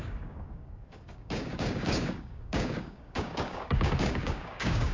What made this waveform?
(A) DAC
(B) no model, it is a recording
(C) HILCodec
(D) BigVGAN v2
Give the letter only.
A